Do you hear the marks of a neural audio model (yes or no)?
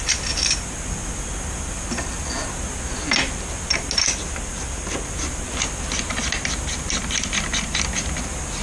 no